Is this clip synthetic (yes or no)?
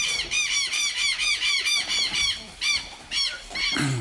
yes